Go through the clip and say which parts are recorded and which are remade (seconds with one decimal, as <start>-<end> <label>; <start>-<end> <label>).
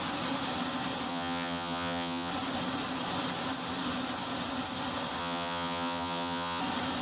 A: 0.0-1.1 recorded; 1.1-2.3 remade; 2.3-5.2 recorded; 5.2-6.6 remade; 6.6-7.0 recorded